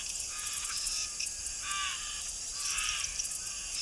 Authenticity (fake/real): fake